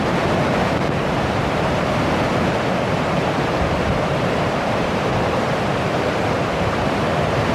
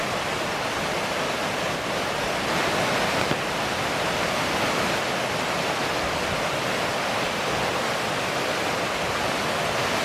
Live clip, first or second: second